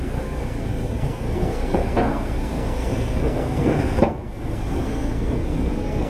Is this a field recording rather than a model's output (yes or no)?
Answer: no